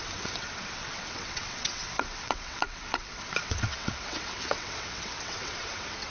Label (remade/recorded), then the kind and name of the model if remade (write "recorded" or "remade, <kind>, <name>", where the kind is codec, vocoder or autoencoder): remade, vocoder, WaveNeXt